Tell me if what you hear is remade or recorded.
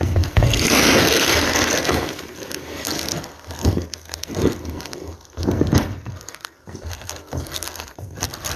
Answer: remade